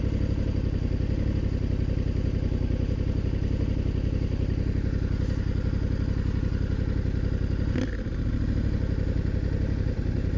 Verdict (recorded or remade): recorded